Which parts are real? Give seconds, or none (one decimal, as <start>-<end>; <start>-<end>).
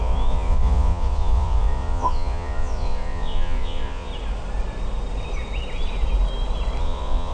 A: 4.1-6.8